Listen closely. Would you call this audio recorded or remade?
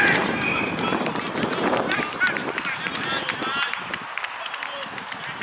recorded